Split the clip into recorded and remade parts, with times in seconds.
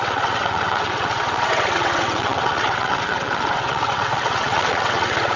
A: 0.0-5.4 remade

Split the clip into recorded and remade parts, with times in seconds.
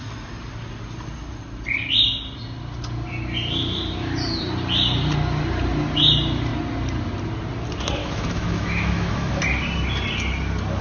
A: 0.0-8.0 recorded; 8.0-9.3 remade; 9.3-10.8 recorded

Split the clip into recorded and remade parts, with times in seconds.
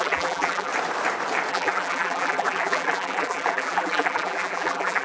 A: 0.0-0.7 remade; 0.7-1.5 recorded; 1.5-5.0 remade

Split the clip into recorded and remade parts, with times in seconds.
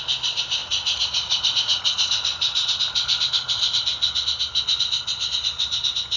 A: 0.0-0.6 recorded; 0.6-2.8 remade; 2.8-6.2 recorded